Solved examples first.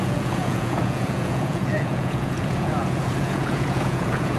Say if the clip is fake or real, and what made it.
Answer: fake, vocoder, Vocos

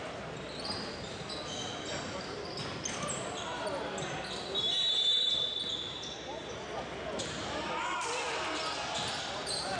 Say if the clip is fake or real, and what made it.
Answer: real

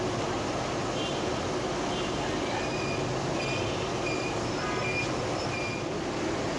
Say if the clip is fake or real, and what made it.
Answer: real